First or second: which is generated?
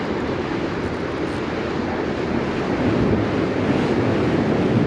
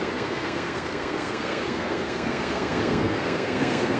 second